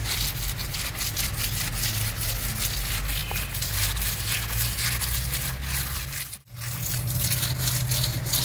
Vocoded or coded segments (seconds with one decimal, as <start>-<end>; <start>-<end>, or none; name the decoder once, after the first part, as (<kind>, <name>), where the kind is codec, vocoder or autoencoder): none